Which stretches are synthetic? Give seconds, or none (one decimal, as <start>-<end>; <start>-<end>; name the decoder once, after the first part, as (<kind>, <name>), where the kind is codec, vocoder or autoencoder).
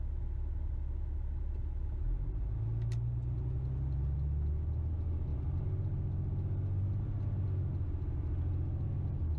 none